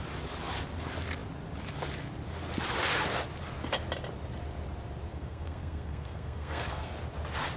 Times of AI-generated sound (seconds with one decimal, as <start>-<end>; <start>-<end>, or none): 5.1-6.9

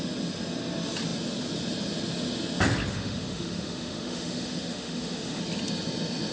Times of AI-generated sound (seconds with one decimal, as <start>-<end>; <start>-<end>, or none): 2.9-5.4